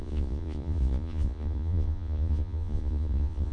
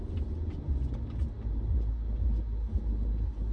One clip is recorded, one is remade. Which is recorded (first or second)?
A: second